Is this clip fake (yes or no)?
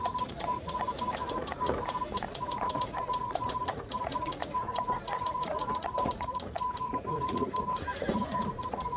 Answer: yes